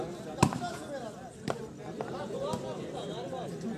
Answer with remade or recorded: recorded